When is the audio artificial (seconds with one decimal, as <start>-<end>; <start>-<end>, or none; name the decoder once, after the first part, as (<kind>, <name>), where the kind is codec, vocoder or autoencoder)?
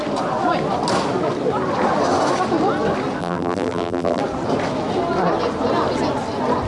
3.2-4.2 (vocoder, BigVGAN v2)